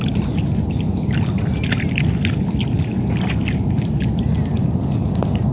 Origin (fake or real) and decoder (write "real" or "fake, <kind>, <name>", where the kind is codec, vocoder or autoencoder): real